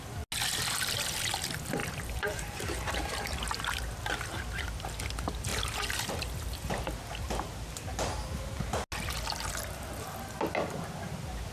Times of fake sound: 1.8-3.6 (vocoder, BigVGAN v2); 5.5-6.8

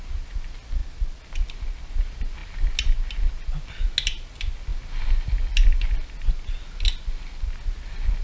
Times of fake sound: none